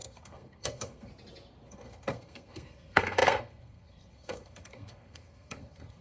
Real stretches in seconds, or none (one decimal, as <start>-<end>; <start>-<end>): 1.1-1.7